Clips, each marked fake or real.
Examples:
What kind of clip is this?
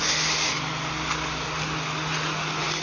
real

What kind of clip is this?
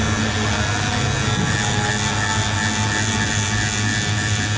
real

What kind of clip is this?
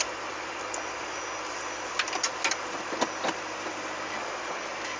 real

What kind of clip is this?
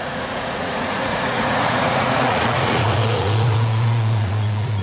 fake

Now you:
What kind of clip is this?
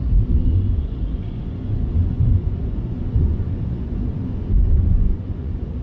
fake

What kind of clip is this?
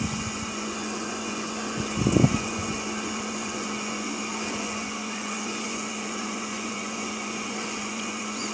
fake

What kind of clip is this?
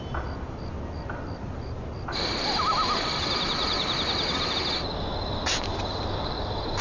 real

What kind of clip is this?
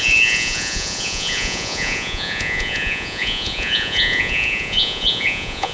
fake